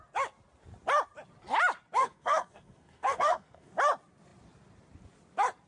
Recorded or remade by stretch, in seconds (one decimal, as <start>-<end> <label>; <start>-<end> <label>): 0.0-2.0 recorded; 2.0-3.7 remade; 3.7-5.7 recorded

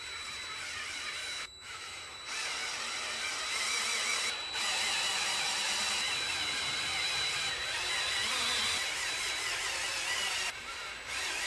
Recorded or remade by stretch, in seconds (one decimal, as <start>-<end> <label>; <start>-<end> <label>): 0.0-1.2 recorded; 1.2-2.2 remade; 2.2-11.5 recorded

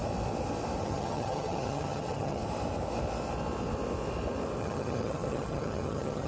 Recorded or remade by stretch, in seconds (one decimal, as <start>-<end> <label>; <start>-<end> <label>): 0.0-0.8 recorded; 0.8-2.4 remade; 2.4-4.6 recorded; 4.6-6.3 remade

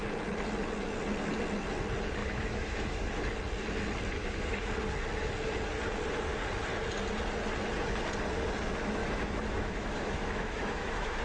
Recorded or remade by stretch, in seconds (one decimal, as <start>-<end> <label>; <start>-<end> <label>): 0.0-2.2 recorded; 2.2-3.2 remade; 3.2-4.2 recorded; 4.2-4.7 remade; 4.7-9.0 recorded; 9.0-11.2 remade

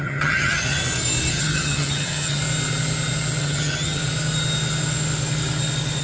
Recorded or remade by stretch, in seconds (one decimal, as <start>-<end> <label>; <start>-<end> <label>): 0.0-0.8 remade; 0.8-1.3 recorded; 1.3-2.4 remade; 2.4-3.4 recorded; 3.4-4.0 remade; 4.0-6.0 recorded

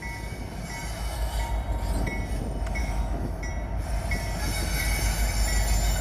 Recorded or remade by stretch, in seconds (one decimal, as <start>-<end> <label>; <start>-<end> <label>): 0.0-2.8 recorded; 2.8-3.4 remade; 3.4-6.0 recorded

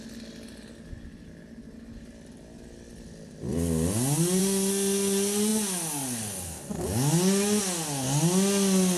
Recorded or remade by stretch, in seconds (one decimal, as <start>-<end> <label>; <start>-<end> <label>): 0.0-9.0 recorded